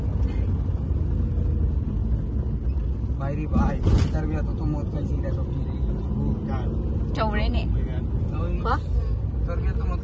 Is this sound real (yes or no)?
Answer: yes